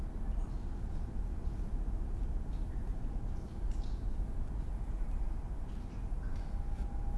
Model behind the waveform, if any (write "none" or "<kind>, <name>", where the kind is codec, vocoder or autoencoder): vocoder, BigVGAN v2